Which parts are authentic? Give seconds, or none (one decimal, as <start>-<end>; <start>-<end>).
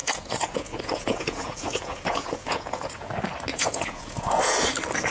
3.1-3.5; 4.4-5.1